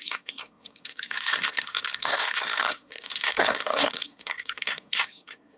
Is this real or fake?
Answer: fake